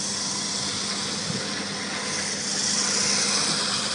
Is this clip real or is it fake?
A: real